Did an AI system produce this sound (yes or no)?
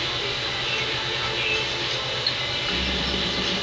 no